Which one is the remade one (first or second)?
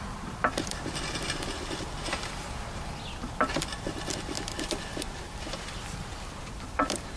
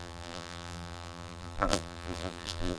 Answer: second